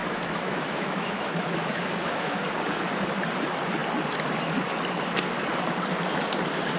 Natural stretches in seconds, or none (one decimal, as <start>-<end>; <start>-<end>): 2.4-6.8